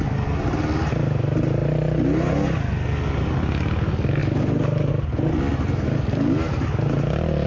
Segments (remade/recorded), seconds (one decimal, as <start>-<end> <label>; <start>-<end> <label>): 0.0-4.2 recorded; 4.2-4.9 remade; 4.9-5.5 recorded; 5.5-7.0 remade; 7.0-7.5 recorded